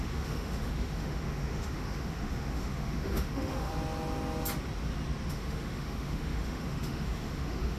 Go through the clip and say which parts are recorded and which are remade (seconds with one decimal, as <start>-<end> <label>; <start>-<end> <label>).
0.0-3.7 remade; 3.7-5.3 recorded; 5.3-7.8 remade